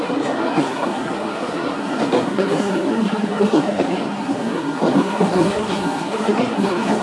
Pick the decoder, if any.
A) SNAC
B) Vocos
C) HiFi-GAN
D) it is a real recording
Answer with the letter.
A